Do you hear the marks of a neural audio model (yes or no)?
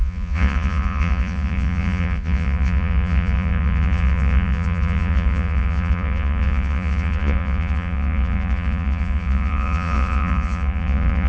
yes